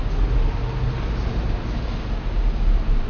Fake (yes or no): no